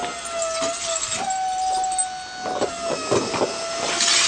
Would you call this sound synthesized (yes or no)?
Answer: no